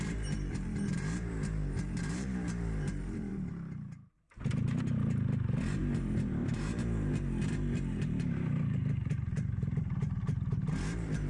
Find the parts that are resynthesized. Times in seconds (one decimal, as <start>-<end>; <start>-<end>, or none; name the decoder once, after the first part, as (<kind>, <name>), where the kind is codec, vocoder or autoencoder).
0.0-3.3 (vocoder, BigVGAN v2); 5.8-11.3